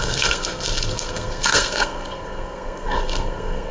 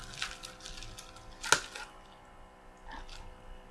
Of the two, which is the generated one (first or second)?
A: first